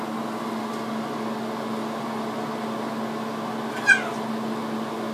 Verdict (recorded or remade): recorded